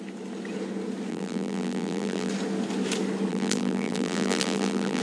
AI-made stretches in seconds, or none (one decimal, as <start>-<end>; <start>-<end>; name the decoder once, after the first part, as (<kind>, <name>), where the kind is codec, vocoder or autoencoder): 1.1-2.3 (vocoder, BigVGAN v2); 3.3-5.0